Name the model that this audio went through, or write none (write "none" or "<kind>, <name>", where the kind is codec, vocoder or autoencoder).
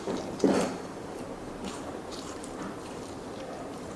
vocoder, BigVGAN v2